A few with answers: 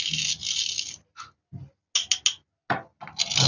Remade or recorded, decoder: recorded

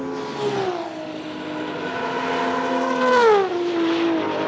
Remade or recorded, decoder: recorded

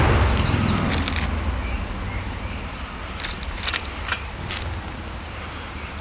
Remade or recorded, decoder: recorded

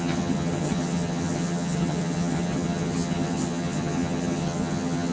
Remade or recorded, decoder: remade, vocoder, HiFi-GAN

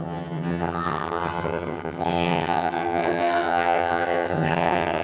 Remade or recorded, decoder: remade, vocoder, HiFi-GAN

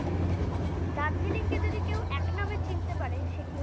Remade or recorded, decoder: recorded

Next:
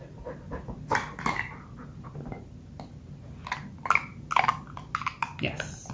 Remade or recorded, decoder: recorded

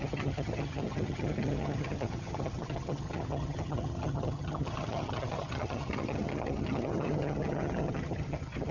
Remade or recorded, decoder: remade, vocoder, HiFi-GAN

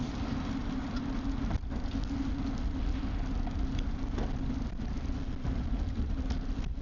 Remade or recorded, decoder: recorded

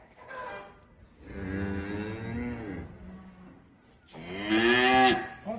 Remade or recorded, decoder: recorded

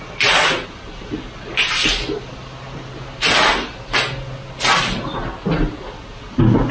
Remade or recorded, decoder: recorded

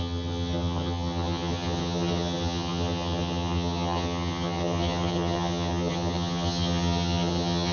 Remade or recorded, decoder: remade, vocoder, HiFi-GAN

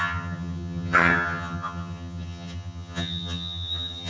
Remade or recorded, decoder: remade, vocoder, HiFi-GAN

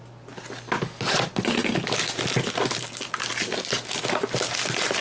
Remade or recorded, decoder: recorded